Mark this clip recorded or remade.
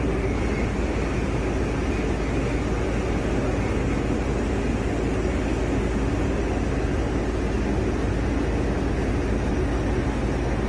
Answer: recorded